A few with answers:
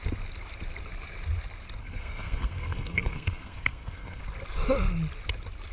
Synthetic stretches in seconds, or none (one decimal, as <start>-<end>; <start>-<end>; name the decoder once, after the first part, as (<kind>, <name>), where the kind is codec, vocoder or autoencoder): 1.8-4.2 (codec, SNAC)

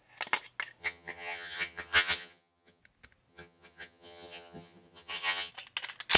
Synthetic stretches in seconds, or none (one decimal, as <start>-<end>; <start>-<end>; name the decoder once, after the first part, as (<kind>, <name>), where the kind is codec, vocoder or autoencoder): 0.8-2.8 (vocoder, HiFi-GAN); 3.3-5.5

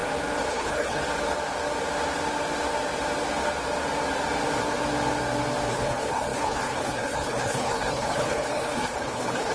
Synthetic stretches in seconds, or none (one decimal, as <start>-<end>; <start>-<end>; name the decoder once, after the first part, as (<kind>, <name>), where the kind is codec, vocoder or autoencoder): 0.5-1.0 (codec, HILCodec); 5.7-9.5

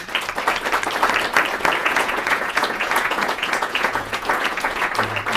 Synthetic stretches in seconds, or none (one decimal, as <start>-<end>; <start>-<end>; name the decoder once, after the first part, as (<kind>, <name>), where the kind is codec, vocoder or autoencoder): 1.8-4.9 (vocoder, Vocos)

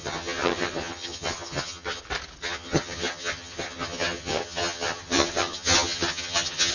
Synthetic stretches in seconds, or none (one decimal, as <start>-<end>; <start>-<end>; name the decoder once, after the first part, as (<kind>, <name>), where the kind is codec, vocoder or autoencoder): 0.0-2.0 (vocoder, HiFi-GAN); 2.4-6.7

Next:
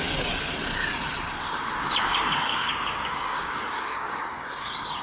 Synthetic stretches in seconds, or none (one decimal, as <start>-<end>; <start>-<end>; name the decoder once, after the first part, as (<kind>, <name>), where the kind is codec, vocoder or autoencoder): 2.5-4.2 (codec, DAC)